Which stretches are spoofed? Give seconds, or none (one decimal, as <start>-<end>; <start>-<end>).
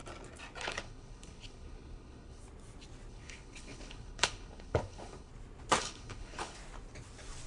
0.6-2.4; 3.1-5.3; 5.8-6.6